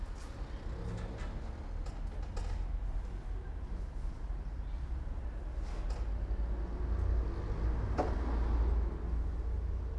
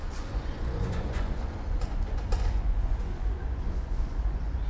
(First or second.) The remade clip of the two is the second